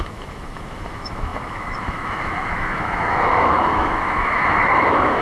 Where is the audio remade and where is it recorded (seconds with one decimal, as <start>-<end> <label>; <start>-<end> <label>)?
0.0-5.2 remade